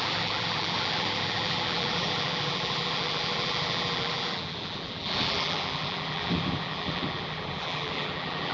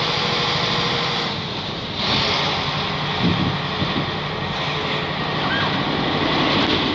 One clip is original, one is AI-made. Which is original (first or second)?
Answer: second